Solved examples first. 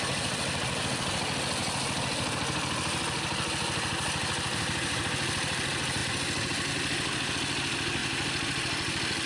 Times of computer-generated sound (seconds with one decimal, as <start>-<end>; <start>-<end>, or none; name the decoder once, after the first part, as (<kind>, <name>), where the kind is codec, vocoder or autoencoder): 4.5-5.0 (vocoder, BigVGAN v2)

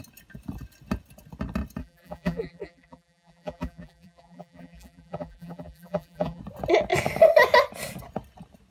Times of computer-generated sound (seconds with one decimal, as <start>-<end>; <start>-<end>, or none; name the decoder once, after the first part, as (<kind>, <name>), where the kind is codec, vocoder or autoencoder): 1.8-6.4 (vocoder, BigVGAN v2)

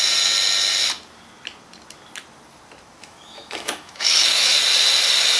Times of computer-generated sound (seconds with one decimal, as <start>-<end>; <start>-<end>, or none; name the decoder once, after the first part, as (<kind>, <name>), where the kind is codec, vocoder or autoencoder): 3.0-4.6 (autoencoder, DAC-VAE)

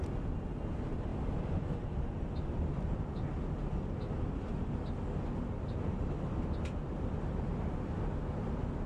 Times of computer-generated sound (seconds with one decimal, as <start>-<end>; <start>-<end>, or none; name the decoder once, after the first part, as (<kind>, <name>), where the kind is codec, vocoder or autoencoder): none